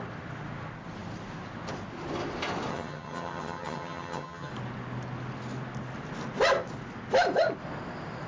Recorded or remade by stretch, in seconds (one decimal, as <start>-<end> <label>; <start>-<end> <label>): 0.0-2.7 recorded; 2.7-4.5 remade; 4.5-8.3 recorded